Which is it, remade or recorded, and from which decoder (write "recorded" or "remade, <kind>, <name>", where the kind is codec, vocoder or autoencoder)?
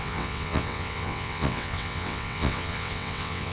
remade, vocoder, WaveNeXt